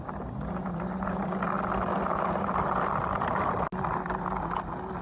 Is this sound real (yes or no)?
yes